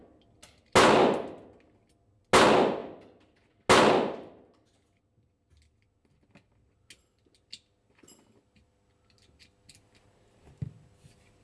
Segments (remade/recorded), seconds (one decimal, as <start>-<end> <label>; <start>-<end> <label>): 0.0-11.4 recorded